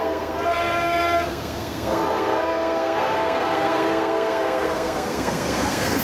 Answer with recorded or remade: remade